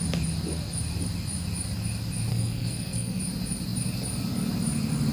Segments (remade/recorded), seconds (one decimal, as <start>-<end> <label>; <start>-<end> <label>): 0.0-2.3 recorded; 2.3-3.2 remade; 3.2-5.1 recorded